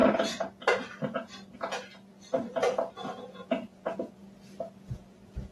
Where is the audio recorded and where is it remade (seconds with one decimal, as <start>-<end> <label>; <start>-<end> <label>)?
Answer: 0.0-3.3 recorded; 3.3-4.2 remade; 4.2-4.9 recorded; 4.9-5.5 remade